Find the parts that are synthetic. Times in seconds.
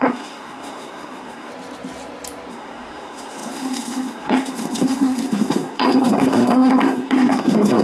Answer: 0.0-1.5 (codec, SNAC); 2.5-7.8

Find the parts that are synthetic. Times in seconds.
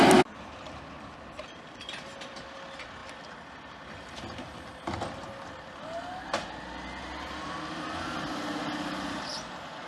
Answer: none